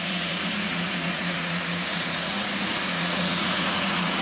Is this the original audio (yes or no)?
no